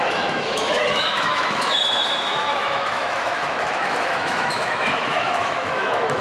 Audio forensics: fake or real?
fake